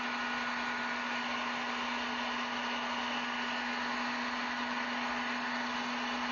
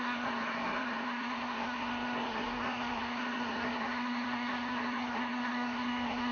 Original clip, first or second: first